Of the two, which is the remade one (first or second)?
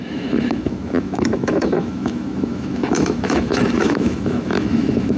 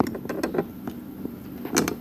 first